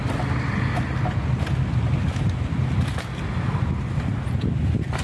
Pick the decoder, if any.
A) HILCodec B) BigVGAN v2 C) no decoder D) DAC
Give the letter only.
C